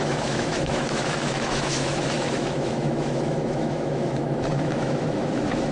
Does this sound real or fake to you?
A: fake